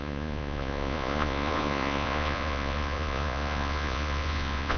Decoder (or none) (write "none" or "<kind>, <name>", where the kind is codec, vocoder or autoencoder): vocoder, Vocos